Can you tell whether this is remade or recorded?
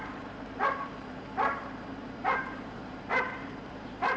remade